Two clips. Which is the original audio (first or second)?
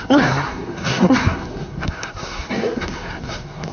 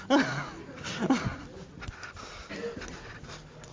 second